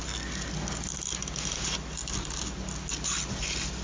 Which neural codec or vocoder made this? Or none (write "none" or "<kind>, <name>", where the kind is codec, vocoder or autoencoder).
none